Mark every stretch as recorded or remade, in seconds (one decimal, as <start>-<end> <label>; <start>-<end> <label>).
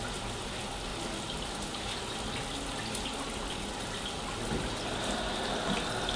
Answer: 0.0-6.2 recorded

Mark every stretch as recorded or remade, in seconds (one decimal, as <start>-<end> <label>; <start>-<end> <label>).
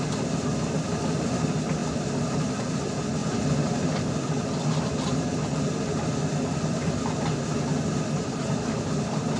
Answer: 0.0-9.4 recorded